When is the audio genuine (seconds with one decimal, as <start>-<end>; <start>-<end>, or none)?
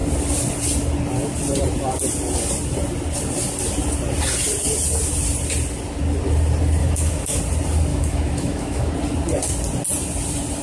0.0-6.8; 7.4-7.9; 8.9-10.6